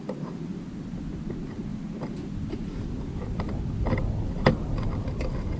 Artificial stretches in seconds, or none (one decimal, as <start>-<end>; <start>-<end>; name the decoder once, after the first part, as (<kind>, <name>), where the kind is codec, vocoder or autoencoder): none